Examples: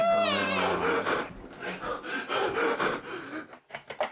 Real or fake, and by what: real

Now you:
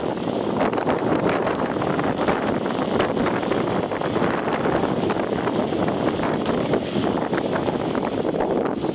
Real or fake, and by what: real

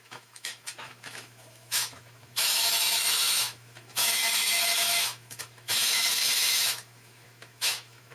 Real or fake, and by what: fake, autoencoder, DAC-VAE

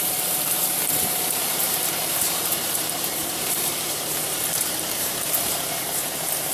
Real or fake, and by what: fake, vocoder, BigVGAN v2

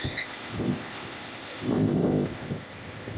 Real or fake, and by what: fake, codec, ZipCodec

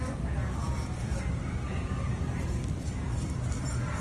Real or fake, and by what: real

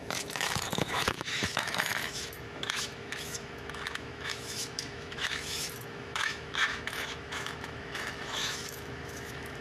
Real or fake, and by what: fake, autoencoder, DAC-VAE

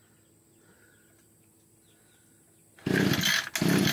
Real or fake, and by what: real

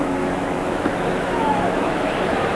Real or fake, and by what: fake, autoencoder, DAC-VAE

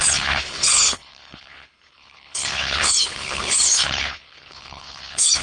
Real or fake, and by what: fake, codec, HILCodec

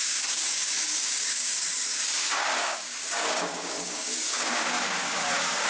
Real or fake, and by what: fake, codec, DAC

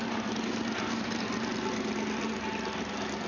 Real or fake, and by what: real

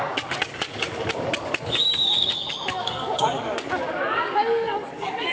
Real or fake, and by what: fake, codec, DAC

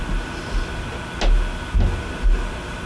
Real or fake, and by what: real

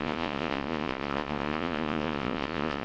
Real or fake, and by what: fake, vocoder, Vocos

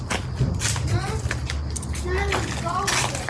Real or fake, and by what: real